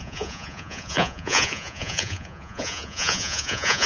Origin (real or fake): fake